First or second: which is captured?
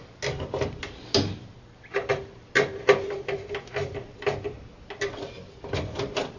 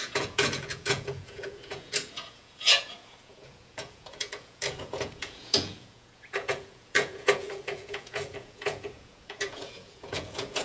first